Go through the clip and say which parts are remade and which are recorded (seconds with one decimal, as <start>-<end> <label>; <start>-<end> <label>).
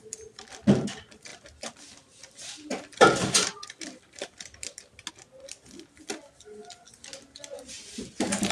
0.0-8.5 recorded